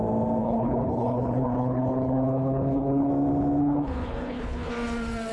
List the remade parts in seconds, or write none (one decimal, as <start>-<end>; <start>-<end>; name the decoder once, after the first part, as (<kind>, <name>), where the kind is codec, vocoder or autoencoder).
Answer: 0.4-3.1 (codec, HILCodec); 3.6-4.7